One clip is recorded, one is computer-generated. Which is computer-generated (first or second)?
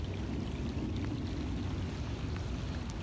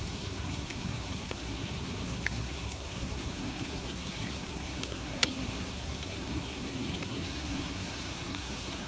second